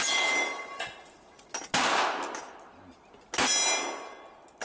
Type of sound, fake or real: real